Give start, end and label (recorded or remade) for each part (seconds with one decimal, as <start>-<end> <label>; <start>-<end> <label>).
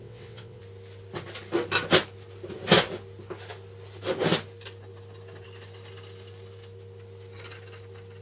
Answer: 0.0-0.6 remade; 0.6-8.2 recorded